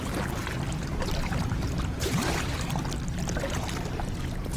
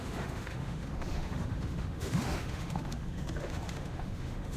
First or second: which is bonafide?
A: first